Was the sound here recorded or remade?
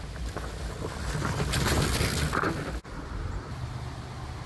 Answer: recorded